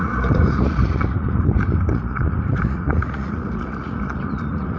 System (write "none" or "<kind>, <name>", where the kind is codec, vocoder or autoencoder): vocoder, Vocos